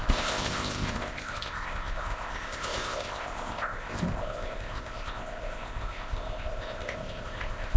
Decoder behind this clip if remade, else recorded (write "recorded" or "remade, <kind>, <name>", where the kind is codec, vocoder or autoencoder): remade, codec, ZipCodec